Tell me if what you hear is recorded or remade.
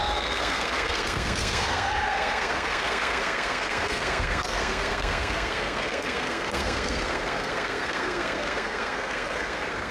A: remade